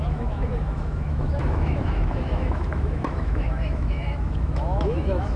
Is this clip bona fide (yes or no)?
no